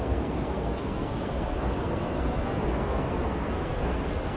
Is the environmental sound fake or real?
fake